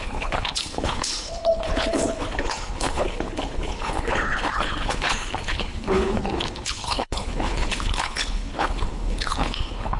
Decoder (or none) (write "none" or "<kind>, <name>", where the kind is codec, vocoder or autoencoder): codec, HILCodec